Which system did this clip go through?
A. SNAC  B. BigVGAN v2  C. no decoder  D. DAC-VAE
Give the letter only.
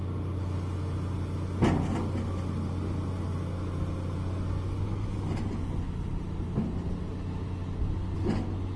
C